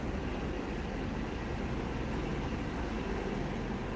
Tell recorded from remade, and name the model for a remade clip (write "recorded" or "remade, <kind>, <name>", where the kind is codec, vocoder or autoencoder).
recorded